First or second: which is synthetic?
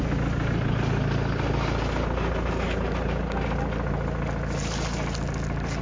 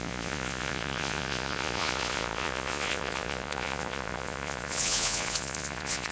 second